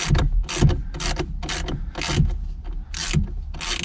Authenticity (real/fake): real